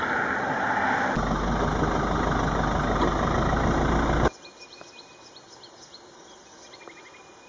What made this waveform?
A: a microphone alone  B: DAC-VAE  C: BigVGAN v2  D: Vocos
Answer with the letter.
A